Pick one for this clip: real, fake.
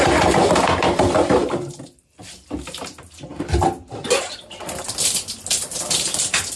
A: real